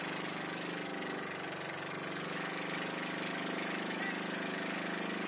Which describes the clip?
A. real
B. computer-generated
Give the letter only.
A